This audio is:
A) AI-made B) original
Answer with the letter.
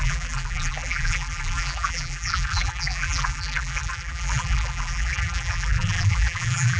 A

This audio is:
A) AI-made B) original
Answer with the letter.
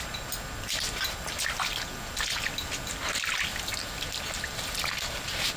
B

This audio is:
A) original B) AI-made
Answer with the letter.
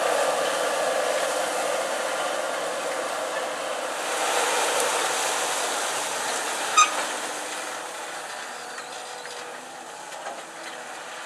A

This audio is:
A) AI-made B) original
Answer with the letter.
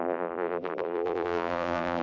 A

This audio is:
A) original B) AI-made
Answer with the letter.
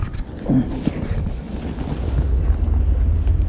A